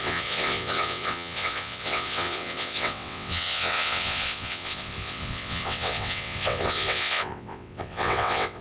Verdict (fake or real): fake